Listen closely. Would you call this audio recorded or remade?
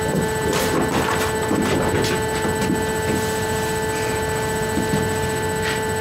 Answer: recorded